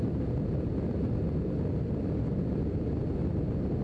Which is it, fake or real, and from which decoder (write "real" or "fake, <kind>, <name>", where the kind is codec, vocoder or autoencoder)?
real